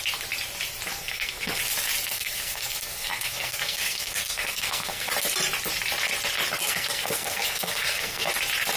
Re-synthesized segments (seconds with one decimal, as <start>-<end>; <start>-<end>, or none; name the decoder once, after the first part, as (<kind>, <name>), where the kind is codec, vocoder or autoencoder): 0.9-1.6 (codec, SNAC); 2.1-5.1; 6.6-8.3